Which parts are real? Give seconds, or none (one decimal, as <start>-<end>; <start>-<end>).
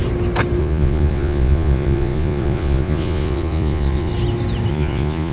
0.0-0.6; 4.1-4.7